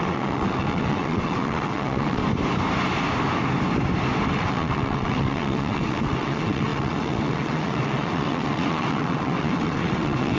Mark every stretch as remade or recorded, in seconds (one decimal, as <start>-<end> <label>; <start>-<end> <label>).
0.0-2.2 remade; 2.2-4.3 recorded; 4.3-10.4 remade